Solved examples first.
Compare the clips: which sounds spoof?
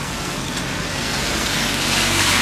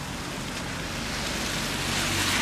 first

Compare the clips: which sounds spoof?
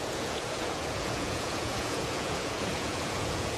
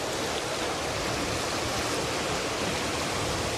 first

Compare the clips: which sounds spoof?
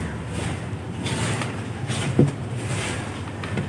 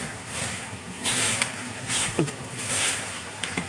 second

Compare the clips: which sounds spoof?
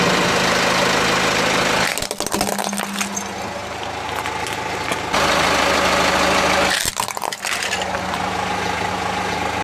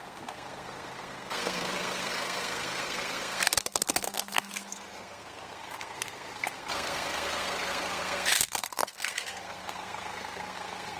second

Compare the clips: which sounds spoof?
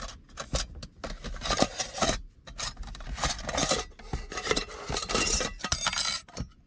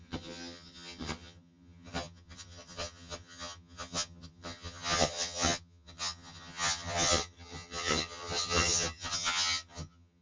second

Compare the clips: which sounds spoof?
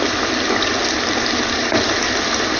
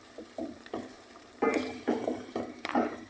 second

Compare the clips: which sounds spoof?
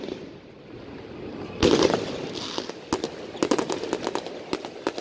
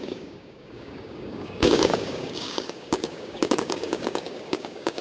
second